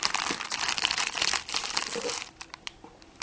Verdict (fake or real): fake